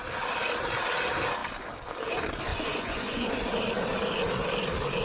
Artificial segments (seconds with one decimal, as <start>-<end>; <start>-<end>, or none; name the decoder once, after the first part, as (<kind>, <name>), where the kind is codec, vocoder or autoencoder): 2.5-3.3 (vocoder, Vocos)